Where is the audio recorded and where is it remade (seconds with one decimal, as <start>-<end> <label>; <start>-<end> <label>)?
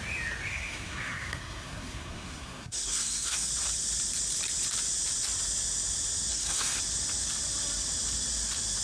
0.0-0.5 recorded; 0.5-3.5 remade; 3.5-6.3 recorded; 6.3-6.8 remade; 6.8-8.8 recorded